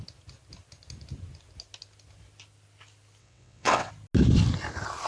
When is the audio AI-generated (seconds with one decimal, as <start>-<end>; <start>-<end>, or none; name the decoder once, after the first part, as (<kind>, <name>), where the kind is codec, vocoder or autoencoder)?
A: 3.2-3.9 (vocoder, WaveNeXt)